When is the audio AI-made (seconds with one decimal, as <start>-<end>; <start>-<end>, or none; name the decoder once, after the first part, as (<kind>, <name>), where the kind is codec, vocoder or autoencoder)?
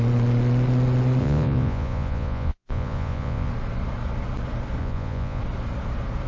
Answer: 1.2-3.5 (vocoder, Vocos); 4.8-5.4